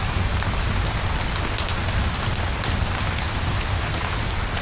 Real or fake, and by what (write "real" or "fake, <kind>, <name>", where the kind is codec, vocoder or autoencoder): real